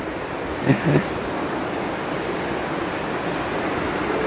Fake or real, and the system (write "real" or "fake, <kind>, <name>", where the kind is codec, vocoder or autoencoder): real